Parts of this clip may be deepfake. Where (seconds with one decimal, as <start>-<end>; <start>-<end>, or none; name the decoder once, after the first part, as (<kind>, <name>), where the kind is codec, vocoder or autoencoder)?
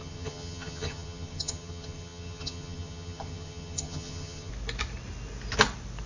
0.0-4.5 (vocoder, HiFi-GAN)